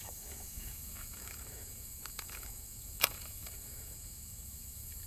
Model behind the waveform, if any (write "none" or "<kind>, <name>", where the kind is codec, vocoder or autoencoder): autoencoder, DAC-VAE